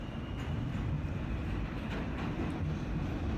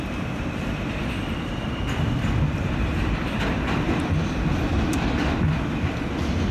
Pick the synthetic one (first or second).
second